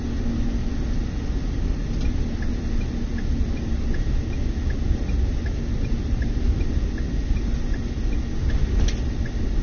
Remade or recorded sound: recorded